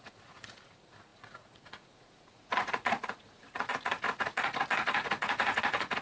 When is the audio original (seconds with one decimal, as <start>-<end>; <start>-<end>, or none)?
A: none